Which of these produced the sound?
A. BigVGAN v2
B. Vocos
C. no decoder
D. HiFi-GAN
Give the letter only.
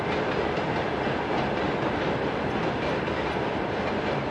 C